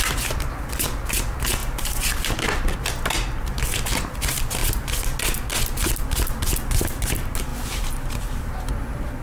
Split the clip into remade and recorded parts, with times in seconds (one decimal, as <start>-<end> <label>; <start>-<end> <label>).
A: 0.0-1.6 recorded; 1.6-2.5 remade; 2.5-7.5 recorded; 7.5-8.7 remade; 8.7-9.2 recorded